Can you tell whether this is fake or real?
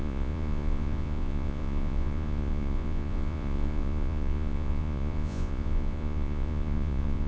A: fake